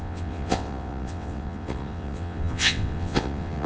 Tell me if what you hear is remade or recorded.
remade